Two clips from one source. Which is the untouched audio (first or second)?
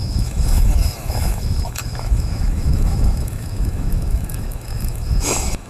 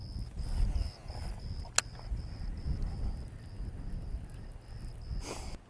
second